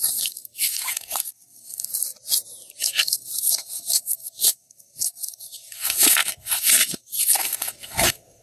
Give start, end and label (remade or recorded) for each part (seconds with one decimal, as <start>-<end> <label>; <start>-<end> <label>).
0.0-1.9 remade; 1.9-2.8 recorded; 2.8-8.4 remade